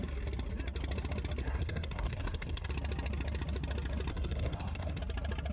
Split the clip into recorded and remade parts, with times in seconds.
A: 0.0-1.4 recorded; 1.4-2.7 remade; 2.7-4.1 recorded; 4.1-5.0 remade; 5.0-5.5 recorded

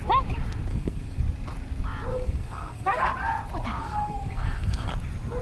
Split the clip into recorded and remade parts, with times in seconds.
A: 0.0-0.7 recorded; 0.7-1.2 remade; 1.2-2.1 recorded; 2.1-3.1 remade; 3.1-3.8 recorded; 3.8-4.9 remade; 4.9-5.4 recorded

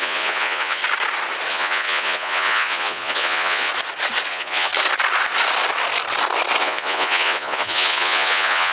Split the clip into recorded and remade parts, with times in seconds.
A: 0.0-0.8 remade; 0.8-1.5 recorded; 1.5-3.7 remade; 3.7-4.3 recorded; 4.3-4.7 remade; 4.7-6.6 recorded; 6.6-8.7 remade

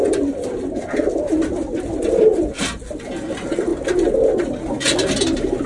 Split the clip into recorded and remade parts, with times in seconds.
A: 0.0-5.7 recorded

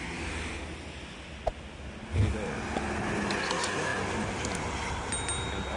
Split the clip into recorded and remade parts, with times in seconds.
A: 0.0-5.8 recorded

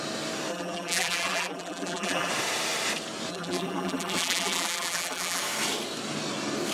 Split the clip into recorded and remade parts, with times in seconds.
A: 0.0-0.5 recorded; 0.5-2.3 remade; 2.3-3.3 recorded; 3.3-5.4 remade; 5.4-6.7 recorded